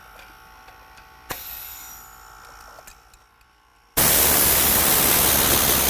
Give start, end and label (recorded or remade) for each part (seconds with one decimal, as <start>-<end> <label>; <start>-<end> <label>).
0.0-5.9 recorded